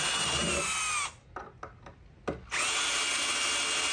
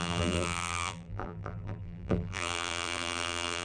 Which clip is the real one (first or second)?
first